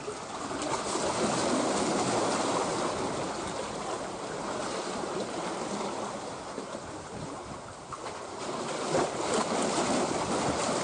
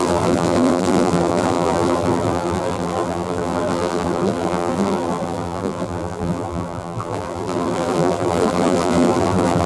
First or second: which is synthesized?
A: second